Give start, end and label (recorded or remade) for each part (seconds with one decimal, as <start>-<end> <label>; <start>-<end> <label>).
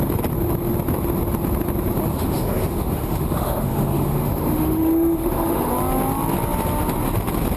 0.0-2.1 recorded; 2.1-5.7 remade; 5.7-7.6 recorded